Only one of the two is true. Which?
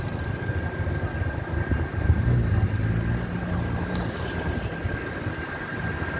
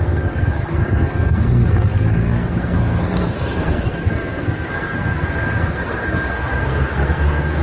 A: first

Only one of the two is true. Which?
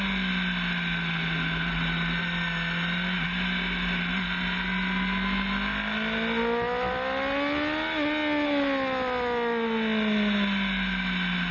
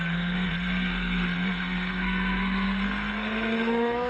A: first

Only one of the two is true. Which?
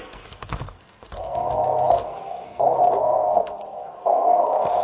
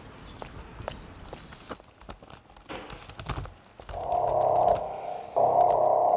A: second